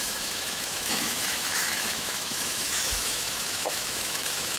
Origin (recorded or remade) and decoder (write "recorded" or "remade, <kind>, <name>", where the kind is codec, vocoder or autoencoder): remade, autoencoder, DAC-VAE